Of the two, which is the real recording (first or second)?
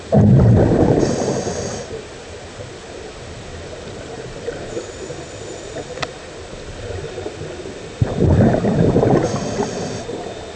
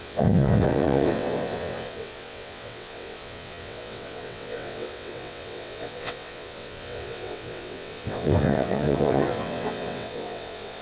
first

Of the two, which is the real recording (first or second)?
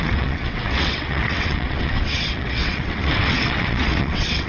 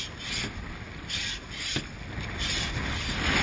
second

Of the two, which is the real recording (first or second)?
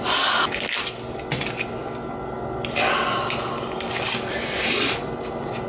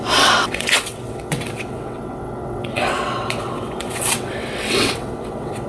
first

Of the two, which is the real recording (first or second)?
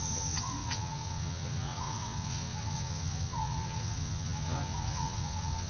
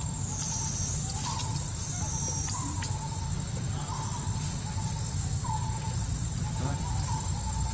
second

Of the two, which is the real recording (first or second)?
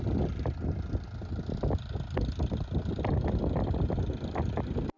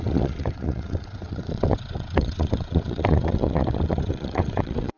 first